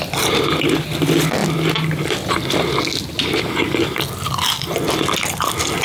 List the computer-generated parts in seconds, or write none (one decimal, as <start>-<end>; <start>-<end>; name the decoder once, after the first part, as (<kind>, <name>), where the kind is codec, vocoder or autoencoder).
none